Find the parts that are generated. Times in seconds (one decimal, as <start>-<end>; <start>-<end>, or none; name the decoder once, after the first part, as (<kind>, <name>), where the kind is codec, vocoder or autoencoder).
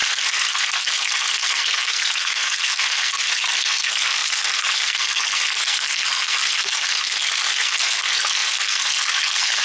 0.0-9.6 (codec, SNAC)